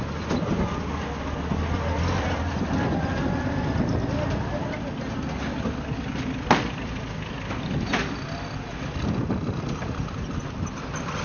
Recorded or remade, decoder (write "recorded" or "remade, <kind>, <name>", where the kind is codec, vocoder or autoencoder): recorded